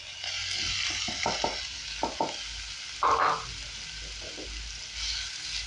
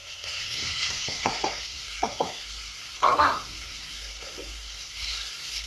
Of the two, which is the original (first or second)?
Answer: first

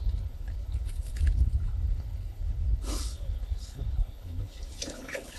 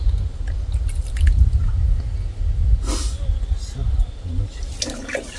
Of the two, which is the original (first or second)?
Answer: second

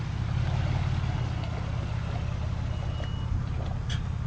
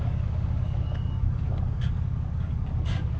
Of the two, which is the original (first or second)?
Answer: first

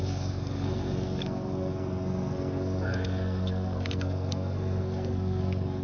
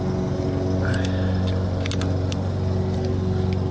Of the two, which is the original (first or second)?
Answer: second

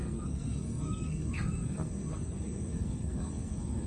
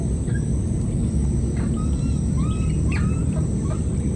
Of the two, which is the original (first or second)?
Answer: second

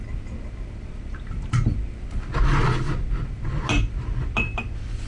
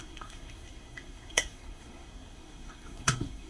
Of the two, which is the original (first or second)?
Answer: first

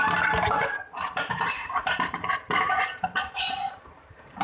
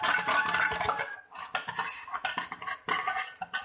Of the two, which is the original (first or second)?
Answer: second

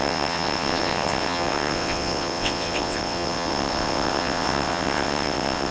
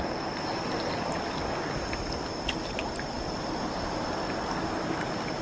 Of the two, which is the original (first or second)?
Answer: second